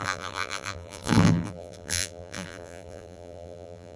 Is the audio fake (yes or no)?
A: yes